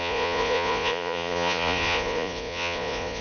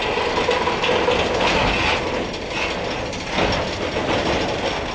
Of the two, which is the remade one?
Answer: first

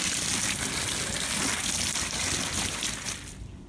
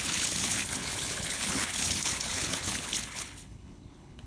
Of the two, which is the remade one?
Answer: second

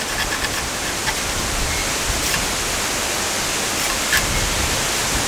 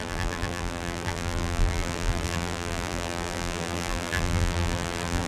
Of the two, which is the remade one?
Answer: second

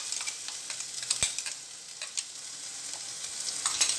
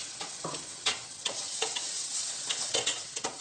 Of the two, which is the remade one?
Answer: second